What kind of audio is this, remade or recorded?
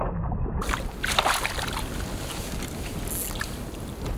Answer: recorded